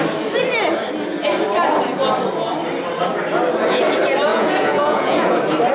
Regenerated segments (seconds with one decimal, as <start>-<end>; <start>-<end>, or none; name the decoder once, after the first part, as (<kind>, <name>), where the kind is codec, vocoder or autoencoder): 4.3-5.3 (vocoder, Vocos)

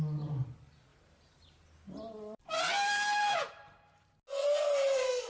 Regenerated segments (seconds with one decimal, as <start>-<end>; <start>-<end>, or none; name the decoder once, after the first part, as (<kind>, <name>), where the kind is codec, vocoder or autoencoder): 0.9-4.1 (vocoder, BigVGAN v2)

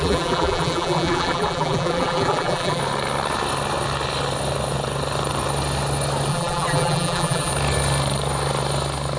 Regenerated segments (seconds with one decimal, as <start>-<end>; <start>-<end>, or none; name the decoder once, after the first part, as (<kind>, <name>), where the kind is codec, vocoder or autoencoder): 0.0-2.8 (vocoder, BigVGAN v2); 6.3-7.5